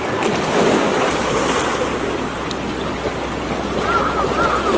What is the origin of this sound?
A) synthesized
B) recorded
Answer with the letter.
B